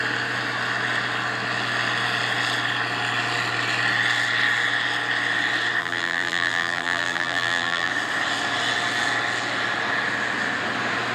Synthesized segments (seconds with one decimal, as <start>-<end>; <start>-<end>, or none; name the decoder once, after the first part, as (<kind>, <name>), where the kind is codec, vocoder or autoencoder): 5.8-7.9 (vocoder, BigVGAN v2)